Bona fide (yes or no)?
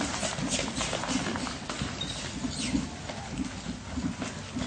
yes